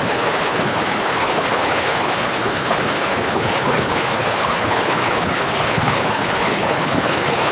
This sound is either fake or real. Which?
fake